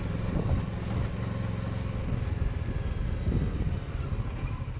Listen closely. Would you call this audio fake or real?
real